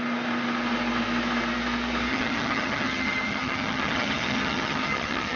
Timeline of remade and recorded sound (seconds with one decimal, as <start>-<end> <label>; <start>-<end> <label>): 0.0-2.1 recorded; 2.1-5.4 remade